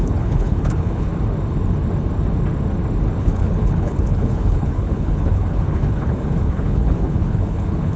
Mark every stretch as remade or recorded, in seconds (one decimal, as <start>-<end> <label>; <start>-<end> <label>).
0.0-1.1 remade; 1.1-3.2 recorded; 3.2-8.0 remade

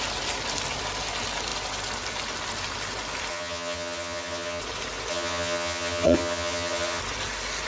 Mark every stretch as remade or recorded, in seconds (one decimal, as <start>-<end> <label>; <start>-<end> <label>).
0.0-3.3 recorded; 3.3-4.6 remade; 4.6-5.1 recorded; 5.1-7.0 remade; 7.0-7.7 recorded

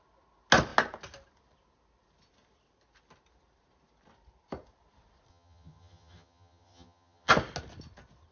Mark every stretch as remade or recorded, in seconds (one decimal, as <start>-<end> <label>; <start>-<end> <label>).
0.0-5.3 recorded; 5.3-7.3 remade; 7.3-8.3 recorded